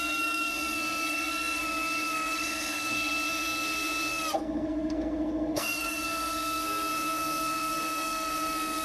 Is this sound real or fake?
fake